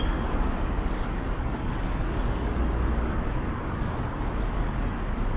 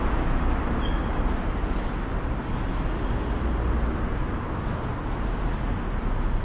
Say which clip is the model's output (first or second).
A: first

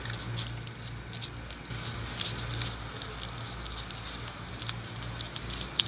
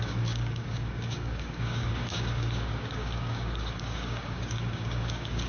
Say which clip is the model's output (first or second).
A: second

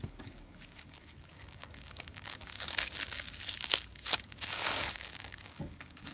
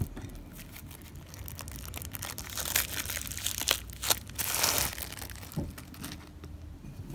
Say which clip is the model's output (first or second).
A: first